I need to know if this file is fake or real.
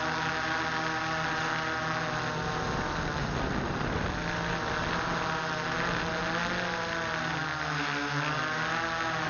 real